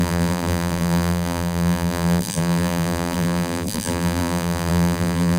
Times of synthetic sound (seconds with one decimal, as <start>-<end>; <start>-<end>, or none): 0.0-5.4